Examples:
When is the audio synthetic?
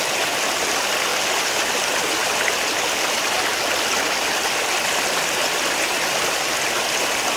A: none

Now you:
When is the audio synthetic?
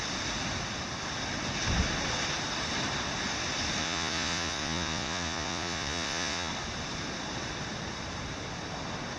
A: 3.8-6.5 (vocoder, Vocos)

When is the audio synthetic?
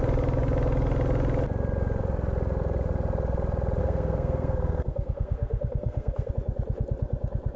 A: 3.8-6.3 (codec, SNAC)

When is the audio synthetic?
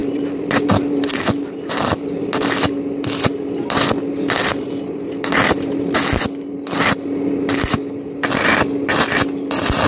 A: 0.0-1.2 (vocoder, BigVGAN v2)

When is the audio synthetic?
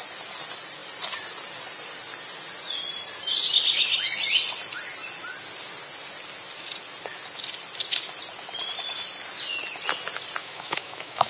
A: 10.4-11.3 (autoencoder, DAC-VAE)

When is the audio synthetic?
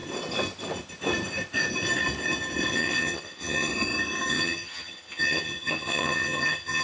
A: 2.7-3.7 (vocoder, HiFi-GAN); 4.3-6.8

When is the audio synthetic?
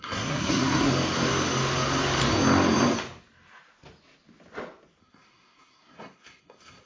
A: 0.0-0.9 (codec, SNAC); 5.0-6.9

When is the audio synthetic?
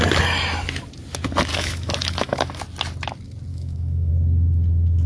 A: 1.5-2.6 (autoencoder, DAC-VAE); 3.5-4.1